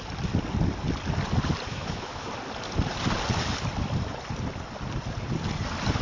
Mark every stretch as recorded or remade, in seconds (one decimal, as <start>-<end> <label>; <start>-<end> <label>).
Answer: 0.0-1.7 recorded; 1.7-2.3 remade; 2.3-6.0 recorded